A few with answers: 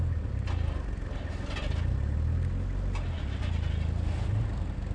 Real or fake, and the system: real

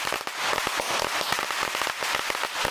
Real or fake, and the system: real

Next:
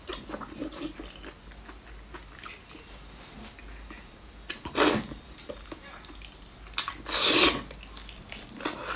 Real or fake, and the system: real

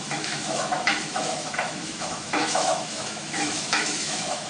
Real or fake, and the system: fake, autoencoder, DAC-VAE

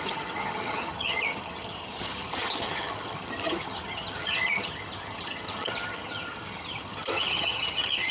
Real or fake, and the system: fake, vocoder, HiFi-GAN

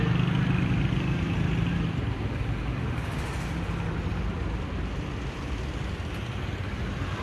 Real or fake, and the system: real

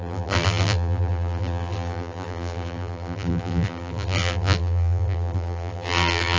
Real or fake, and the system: fake, vocoder, BigVGAN v2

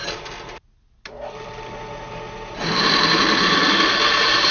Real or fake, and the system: real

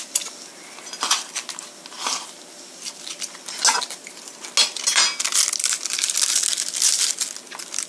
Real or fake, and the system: real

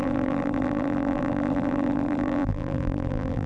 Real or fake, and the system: fake, vocoder, BigVGAN v2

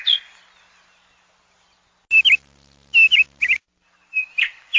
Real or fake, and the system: real